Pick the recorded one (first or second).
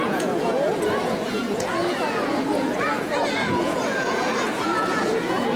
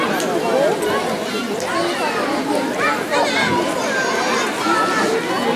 second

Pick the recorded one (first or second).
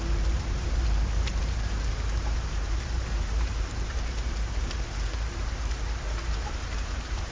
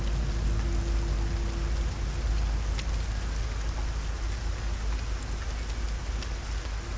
second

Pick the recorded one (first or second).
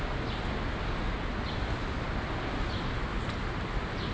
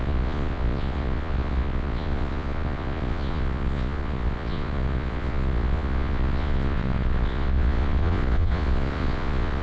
first